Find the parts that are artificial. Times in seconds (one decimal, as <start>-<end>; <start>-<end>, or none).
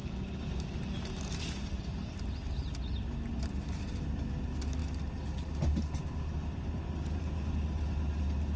none